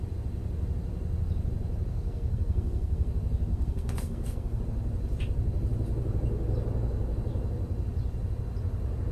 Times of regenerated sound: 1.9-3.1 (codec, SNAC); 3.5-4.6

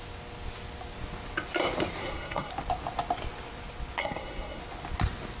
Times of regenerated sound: 2.0-2.5 (codec, SNAC); 4.0-4.6

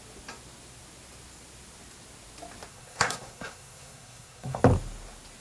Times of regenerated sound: 2.7-4.6 (codec, SNAC)

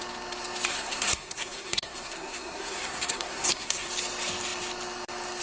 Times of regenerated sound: 0.7-3.9 (codec, SNAC)

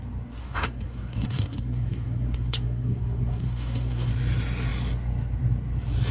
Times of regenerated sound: 0.4-4.1 (codec, SNAC)

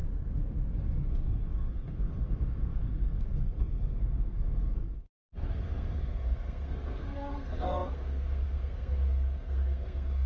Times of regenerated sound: 1.1-10.3 (codec, SNAC)

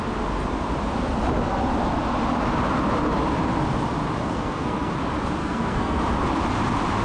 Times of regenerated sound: 4.2-4.9 (codec, SNAC); 5.4-6.0